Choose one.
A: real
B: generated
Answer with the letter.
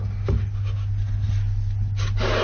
A